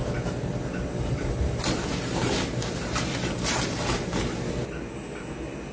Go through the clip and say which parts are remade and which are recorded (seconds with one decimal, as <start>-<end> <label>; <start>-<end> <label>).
0.0-5.7 recorded